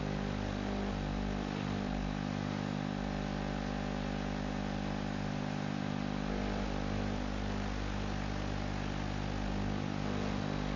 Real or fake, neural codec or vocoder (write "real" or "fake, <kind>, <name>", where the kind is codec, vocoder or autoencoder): real